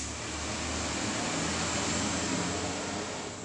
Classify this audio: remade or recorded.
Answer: recorded